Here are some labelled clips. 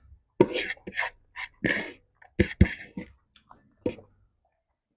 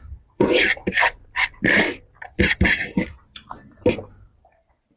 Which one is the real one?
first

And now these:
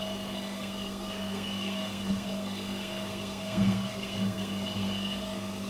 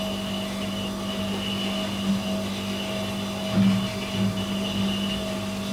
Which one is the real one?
second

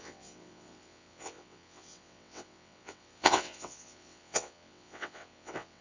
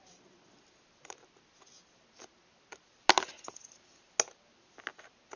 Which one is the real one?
second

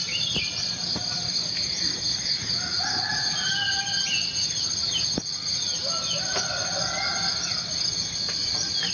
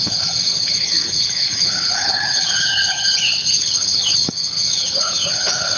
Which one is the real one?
first